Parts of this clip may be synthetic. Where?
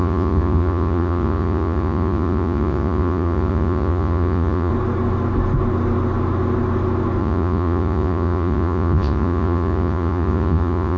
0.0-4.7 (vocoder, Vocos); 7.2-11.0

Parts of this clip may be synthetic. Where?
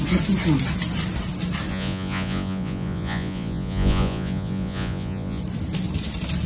1.7-5.4 (vocoder, Vocos)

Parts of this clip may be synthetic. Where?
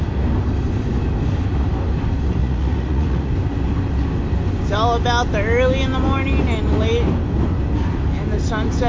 2.4-3.3 (vocoder, Vocos)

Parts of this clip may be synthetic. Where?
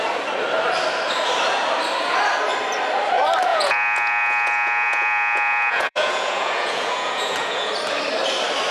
3.5-7.7 (vocoder, Vocos)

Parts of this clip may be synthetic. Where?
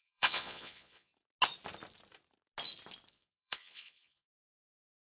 0.0-1.1 (vocoder, Vocos); 3.1-5.1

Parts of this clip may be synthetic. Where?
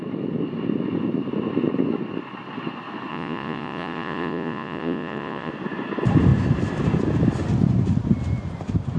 3.1-5.5 (vocoder, Vocos)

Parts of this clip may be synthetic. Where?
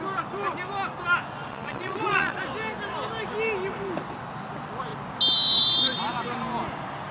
1.5-2.4 (vocoder, Vocos)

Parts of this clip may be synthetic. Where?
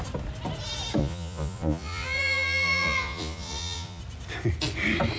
1.0-4.0 (vocoder, Vocos)